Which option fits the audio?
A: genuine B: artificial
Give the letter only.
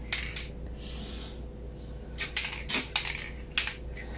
A